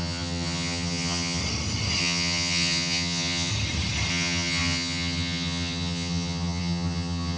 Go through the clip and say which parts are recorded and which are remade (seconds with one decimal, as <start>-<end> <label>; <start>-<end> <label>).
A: 0.0-1.4 remade; 1.4-2.0 recorded; 2.0-3.5 remade; 3.5-4.1 recorded; 4.1-7.4 remade